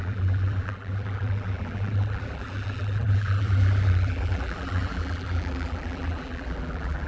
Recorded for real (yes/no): no